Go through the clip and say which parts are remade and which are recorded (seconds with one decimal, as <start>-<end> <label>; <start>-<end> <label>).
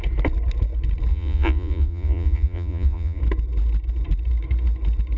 0.0-1.1 recorded; 1.1-3.2 remade; 3.2-5.2 recorded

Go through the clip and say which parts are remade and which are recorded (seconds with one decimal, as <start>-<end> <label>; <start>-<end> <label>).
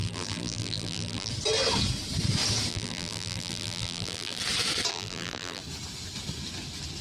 0.0-1.3 remade; 1.3-2.7 recorded; 2.7-4.4 remade; 4.4-4.9 recorded; 4.9-5.6 remade; 5.6-7.0 recorded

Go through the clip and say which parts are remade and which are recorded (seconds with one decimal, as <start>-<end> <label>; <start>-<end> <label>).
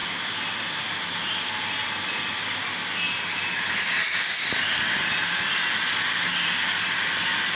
0.0-7.6 recorded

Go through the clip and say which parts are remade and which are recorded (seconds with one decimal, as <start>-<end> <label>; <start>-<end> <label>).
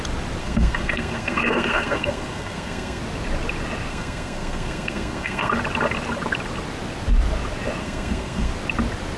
0.0-0.4 recorded; 0.4-3.0 remade; 3.0-3.9 recorded; 3.9-5.5 remade; 5.5-7.8 recorded; 7.8-8.5 remade; 8.5-9.2 recorded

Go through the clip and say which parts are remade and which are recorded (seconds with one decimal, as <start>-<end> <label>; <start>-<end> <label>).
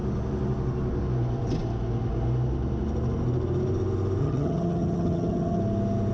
0.0-4.2 recorded; 4.2-5.6 remade; 5.6-6.1 recorded